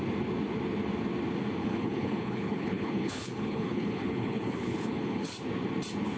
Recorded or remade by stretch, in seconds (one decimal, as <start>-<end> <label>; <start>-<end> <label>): 0.0-1.6 recorded; 1.6-5.3 remade; 5.3-6.2 recorded